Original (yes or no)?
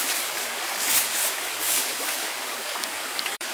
no